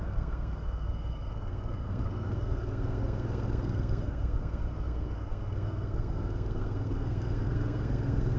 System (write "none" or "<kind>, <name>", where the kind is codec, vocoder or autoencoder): codec, SNAC